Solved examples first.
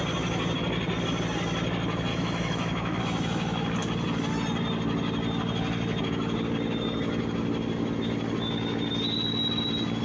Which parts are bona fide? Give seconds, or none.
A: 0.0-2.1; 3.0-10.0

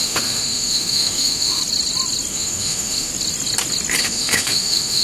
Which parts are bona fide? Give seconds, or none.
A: 1.6-2.3; 3.1-4.0

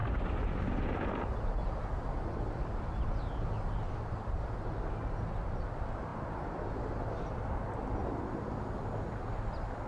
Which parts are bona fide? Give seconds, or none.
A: 0.0-9.9

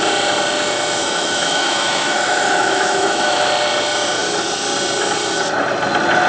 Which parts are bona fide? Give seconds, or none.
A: 0.0-1.0; 3.5-6.3